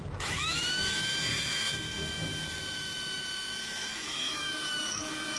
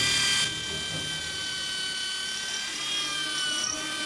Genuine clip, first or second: second